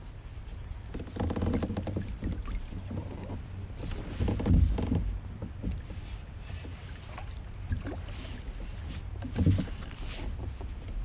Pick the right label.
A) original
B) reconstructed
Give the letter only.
A